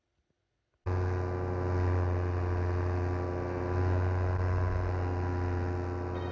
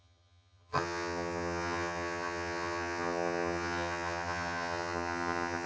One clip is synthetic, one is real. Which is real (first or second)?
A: first